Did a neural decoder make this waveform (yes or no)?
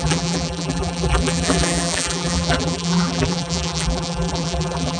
yes